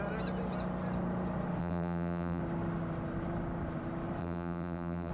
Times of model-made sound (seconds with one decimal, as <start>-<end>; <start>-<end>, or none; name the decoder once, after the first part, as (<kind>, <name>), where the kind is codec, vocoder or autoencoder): 1.6-2.4 (vocoder, BigVGAN v2); 4.2-5.1